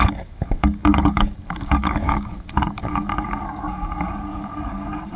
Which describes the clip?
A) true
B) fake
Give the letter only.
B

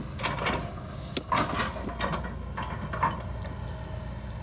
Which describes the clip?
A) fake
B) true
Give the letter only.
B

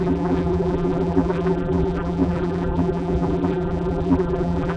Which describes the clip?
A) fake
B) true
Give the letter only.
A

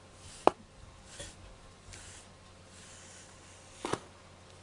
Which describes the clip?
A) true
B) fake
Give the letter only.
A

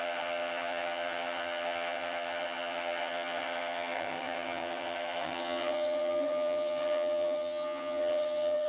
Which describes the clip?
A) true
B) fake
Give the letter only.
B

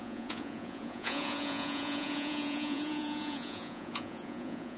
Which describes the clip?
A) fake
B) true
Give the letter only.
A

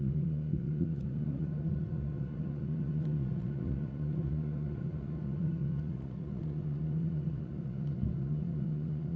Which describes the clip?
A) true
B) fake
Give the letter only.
B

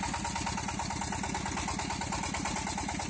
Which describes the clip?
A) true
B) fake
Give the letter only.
A